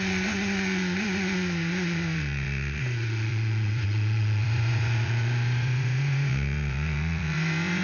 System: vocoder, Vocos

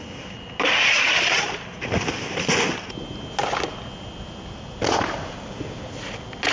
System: none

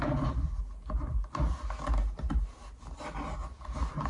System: none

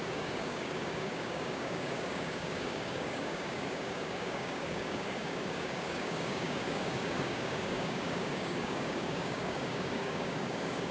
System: codec, DAC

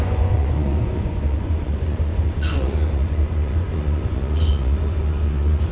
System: vocoder, Vocos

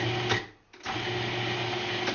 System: none